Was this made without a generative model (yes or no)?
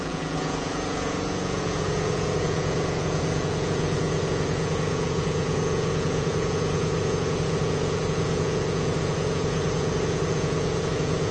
no